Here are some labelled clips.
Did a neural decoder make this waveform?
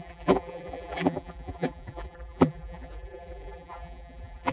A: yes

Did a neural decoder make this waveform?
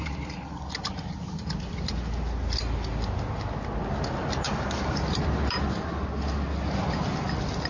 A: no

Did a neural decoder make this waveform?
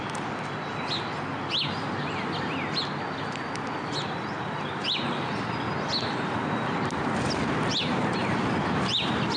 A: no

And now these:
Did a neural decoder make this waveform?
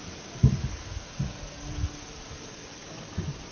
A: no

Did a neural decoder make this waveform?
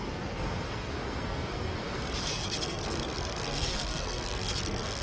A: yes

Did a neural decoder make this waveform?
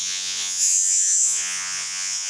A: yes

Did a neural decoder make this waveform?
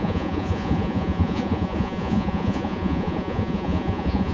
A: yes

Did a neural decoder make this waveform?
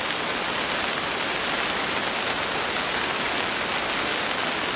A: no